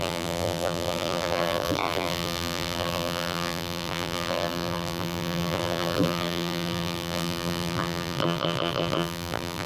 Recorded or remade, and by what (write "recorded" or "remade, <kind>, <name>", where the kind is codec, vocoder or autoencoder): remade, vocoder, BigVGAN v2